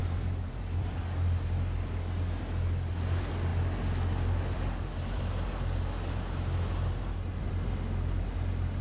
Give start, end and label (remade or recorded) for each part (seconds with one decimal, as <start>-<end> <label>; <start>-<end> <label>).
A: 0.0-1.0 remade; 1.0-8.8 recorded